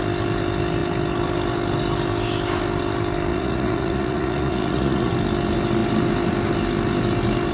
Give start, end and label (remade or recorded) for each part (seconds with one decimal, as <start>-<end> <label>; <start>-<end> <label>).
0.0-3.3 recorded; 3.3-5.1 remade; 5.1-7.5 recorded